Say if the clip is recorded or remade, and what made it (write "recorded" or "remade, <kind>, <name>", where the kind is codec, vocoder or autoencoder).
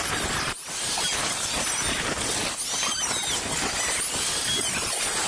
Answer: recorded